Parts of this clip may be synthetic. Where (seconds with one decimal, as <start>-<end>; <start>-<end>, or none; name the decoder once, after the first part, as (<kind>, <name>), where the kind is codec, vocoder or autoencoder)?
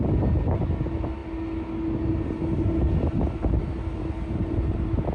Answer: none